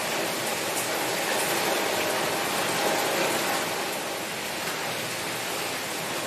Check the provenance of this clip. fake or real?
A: real